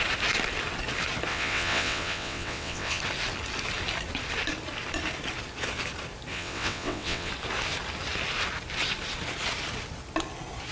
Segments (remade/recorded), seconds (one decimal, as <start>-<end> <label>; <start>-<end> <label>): 0.0-1.3 recorded; 1.3-3.0 remade; 3.0-6.3 recorded; 6.3-7.3 remade; 7.3-10.7 recorded